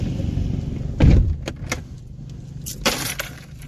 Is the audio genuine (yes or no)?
no